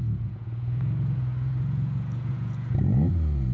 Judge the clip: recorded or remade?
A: remade